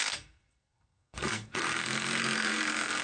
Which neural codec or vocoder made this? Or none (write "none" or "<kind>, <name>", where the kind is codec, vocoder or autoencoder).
codec, SNAC